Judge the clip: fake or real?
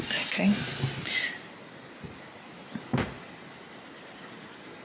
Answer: real